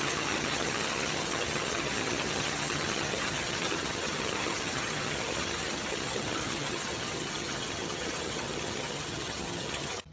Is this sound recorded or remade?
remade